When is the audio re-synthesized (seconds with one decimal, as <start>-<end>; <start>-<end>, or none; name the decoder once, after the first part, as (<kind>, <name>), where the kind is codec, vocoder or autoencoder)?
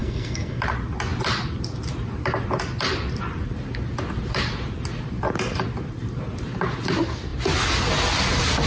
0.0-0.6 (codec, SNAC)